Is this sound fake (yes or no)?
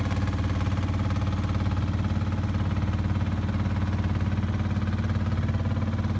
no